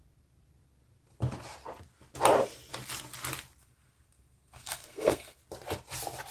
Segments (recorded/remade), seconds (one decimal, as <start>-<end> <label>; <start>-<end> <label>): 0.0-3.6 recorded; 3.6-5.4 remade; 5.4-6.3 recorded